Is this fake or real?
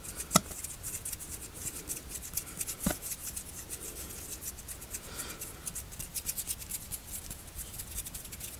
real